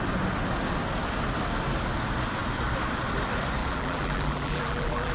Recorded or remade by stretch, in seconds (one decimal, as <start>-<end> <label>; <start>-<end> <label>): 0.0-3.6 recorded; 3.6-5.1 remade